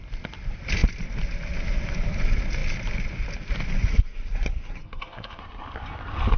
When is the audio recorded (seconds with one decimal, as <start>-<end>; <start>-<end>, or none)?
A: 0.0-3.9; 5.4-6.4